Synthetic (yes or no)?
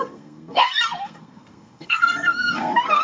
yes